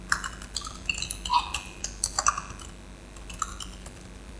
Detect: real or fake real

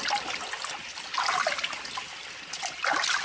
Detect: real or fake real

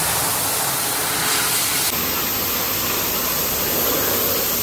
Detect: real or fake real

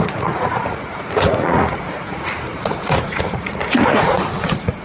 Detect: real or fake fake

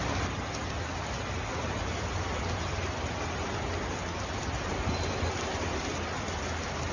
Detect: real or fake real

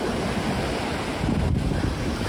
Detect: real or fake real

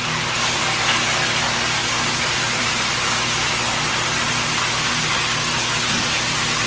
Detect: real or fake real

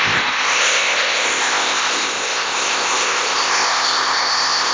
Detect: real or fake fake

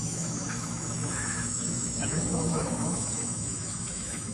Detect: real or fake fake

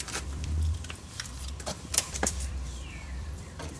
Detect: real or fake fake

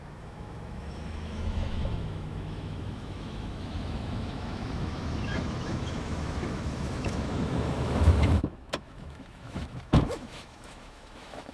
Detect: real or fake fake